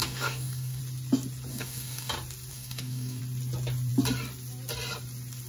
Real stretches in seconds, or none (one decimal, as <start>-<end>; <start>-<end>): 0.8-1.5; 2.1-2.5; 3.2-5.5